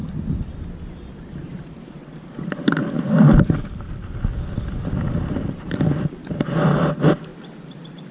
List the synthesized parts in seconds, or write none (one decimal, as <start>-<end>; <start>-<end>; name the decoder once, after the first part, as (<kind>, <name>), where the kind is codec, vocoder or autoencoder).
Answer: 1.5-6.4 (vocoder, BigVGAN v2); 7.3-8.1